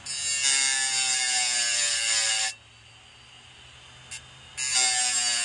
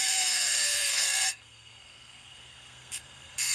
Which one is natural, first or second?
first